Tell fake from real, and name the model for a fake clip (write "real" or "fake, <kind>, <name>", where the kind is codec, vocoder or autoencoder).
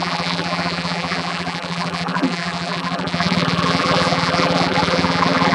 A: fake, vocoder, BigVGAN v2